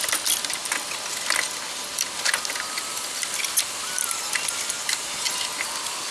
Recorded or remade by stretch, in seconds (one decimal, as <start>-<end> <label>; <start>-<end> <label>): 0.0-6.1 recorded